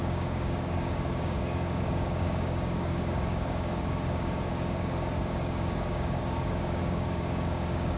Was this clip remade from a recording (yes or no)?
yes